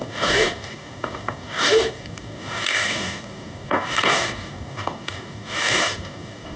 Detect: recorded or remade remade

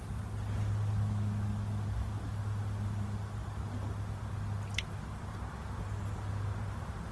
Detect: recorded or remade recorded